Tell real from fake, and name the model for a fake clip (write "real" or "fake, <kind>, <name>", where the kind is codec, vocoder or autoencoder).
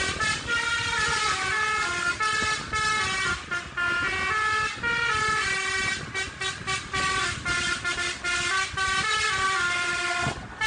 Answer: real